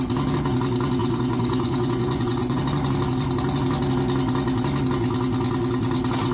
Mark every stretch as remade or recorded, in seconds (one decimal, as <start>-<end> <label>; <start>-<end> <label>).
0.0-1.0 recorded; 1.0-2.6 remade; 2.6-6.3 recorded